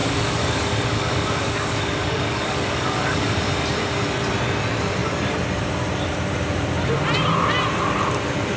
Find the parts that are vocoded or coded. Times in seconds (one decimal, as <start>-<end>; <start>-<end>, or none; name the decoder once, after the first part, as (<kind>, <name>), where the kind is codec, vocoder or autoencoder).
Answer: 0.0-3.3 (codec, DAC)